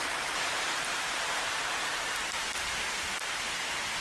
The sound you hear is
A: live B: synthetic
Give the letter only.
A